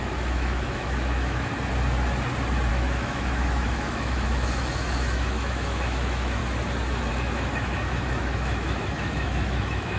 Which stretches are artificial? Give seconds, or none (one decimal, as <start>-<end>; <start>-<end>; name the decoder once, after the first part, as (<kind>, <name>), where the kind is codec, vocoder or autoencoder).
0.0-1.5 (autoencoder, DAC-VAE); 2.7-6.4; 7.1-10.0